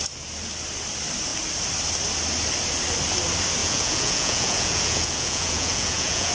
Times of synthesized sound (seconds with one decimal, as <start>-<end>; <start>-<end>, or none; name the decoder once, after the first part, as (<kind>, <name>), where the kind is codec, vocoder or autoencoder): 3.6-6.3 (vocoder, Vocos)